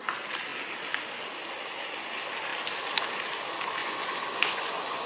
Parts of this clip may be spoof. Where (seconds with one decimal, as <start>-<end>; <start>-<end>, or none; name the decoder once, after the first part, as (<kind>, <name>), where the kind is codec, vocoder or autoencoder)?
3.8-5.1 (vocoder, Vocos)